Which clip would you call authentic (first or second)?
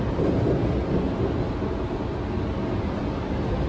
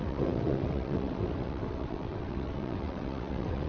first